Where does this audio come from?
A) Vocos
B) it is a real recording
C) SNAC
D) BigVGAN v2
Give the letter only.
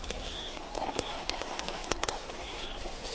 C